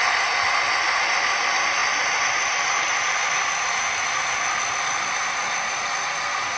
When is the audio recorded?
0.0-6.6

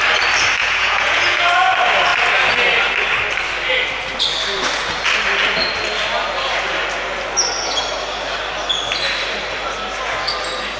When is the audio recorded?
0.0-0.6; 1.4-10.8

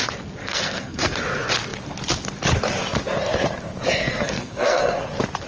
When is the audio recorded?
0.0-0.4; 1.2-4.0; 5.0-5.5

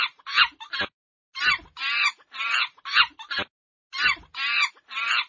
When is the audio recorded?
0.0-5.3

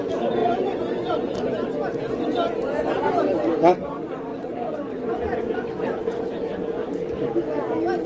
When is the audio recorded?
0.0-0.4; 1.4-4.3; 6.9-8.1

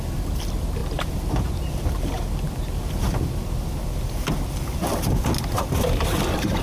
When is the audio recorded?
0.0-6.6